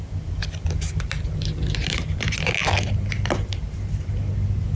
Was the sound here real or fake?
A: real